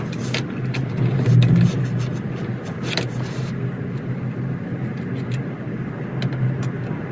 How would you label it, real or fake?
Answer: real